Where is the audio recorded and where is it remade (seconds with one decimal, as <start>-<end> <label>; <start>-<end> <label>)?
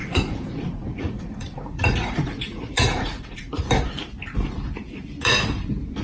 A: 0.0-3.6 remade; 3.6-6.0 recorded